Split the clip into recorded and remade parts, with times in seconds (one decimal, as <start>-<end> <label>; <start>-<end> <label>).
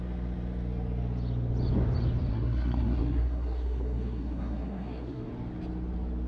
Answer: 0.0-2.3 recorded; 2.3-5.3 remade; 5.3-6.3 recorded